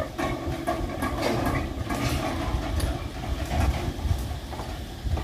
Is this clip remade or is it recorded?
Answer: recorded